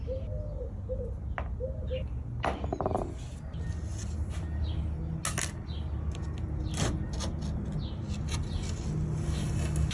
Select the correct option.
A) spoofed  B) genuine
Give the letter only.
B